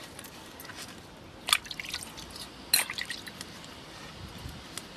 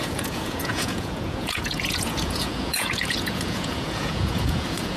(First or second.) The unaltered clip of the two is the first